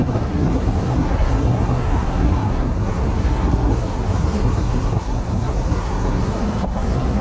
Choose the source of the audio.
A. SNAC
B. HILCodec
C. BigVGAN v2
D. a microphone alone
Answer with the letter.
A